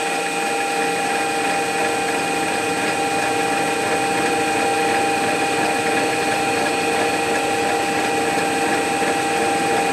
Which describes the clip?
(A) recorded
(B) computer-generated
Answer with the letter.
A